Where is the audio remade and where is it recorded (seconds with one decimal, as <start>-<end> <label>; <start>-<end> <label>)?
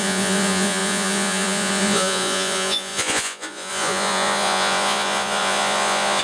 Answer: 0.0-6.2 remade